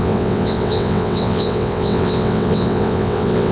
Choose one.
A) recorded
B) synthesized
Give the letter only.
B